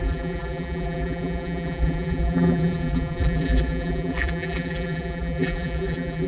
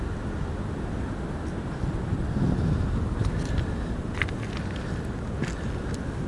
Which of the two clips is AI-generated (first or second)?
first